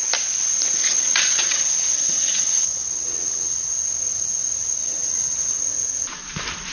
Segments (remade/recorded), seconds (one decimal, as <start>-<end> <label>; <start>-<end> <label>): 0.0-1.0 recorded; 1.0-3.7 remade; 3.7-4.8 recorded; 4.8-5.6 remade; 5.6-6.7 recorded